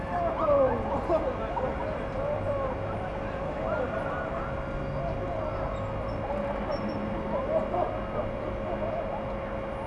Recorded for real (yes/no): yes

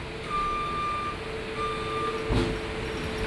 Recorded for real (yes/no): yes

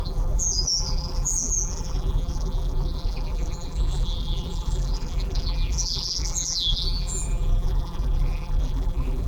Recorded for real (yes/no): no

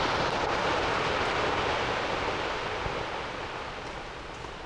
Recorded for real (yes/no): yes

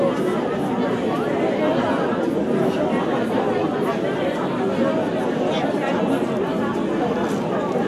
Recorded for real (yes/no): yes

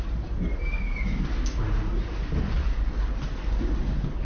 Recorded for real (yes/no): yes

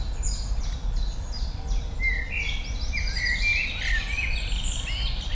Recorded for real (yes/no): yes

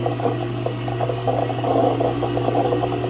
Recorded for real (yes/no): no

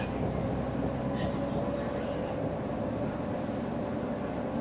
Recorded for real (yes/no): yes